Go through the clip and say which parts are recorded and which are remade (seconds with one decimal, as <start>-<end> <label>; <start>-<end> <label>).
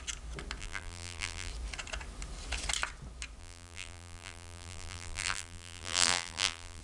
0.0-0.6 recorded; 0.6-1.5 remade; 1.5-3.4 recorded; 3.4-6.8 remade